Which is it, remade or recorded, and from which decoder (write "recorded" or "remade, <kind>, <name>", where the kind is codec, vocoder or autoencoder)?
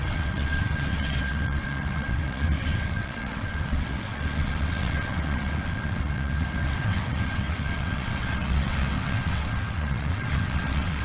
remade, vocoder, WaveNeXt